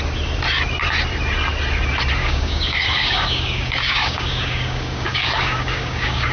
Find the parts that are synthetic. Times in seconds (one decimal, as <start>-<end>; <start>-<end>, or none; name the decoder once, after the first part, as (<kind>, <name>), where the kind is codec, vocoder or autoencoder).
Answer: 2.2-6.3 (codec, DAC)